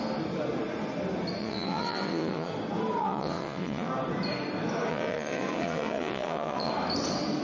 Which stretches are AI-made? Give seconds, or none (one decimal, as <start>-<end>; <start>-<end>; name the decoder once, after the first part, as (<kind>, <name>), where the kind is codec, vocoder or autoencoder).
1.4-2.5 (vocoder, WaveNeXt); 3.0-3.9; 4.9-6.7